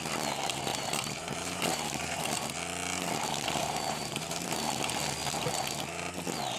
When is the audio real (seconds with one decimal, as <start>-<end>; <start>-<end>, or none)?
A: 0.0-0.7; 2.2-3.6; 4.7-6.6